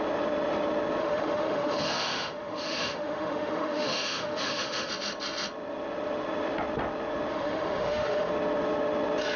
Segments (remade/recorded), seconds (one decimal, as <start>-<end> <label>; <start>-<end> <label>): 0.0-1.0 recorded; 1.0-4.9 remade; 4.9-7.3 recorded; 7.3-8.3 remade; 8.3-9.4 recorded